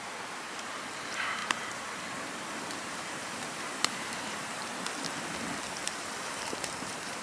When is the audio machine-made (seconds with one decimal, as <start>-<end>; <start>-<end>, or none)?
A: 0.0-4.7; 5.8-7.2